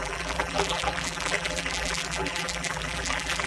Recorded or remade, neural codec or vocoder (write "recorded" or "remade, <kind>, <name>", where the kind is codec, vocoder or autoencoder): remade, vocoder, BigVGAN v2